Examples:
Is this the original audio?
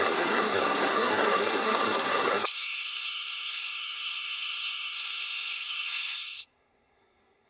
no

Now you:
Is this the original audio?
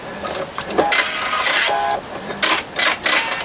yes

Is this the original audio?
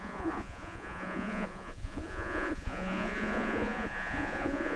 no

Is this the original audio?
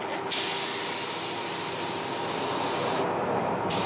yes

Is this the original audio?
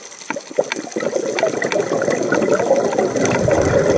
yes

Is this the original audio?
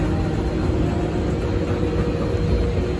yes